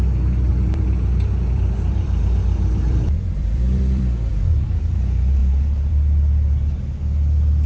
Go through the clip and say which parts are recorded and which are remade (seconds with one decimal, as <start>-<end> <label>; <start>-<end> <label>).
0.0-0.5 recorded; 0.5-4.3 remade; 4.3-7.7 recorded